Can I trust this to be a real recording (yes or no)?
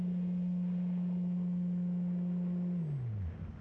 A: yes